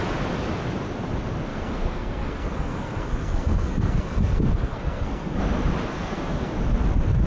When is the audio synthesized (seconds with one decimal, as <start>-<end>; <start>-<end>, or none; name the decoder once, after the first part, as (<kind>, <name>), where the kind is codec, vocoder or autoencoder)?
1.5-5.4 (codec, SNAC); 5.9-6.5